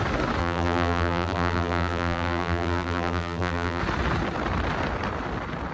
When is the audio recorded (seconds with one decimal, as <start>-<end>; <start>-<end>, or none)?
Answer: 0.0-0.4; 3.8-5.7